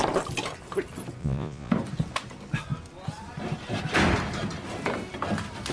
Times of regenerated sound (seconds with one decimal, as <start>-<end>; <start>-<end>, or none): 1.2-1.7